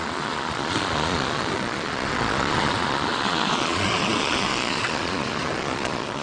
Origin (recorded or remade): remade